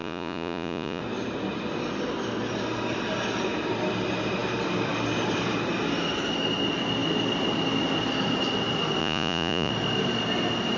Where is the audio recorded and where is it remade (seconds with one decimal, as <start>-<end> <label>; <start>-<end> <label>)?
0.0-1.0 remade; 1.0-9.0 recorded; 9.0-9.7 remade; 9.7-10.8 recorded